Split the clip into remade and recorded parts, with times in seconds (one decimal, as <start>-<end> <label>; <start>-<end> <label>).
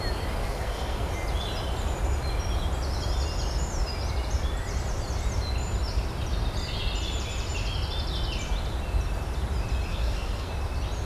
0.0-0.4 recorded; 0.4-1.1 remade; 1.1-9.9 recorded; 9.9-10.5 remade; 10.5-11.1 recorded